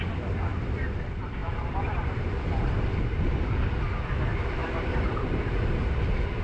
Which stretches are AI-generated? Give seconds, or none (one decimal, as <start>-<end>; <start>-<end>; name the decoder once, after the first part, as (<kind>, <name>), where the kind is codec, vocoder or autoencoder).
1.4-3.3 (vocoder, BigVGAN v2); 4.6-5.4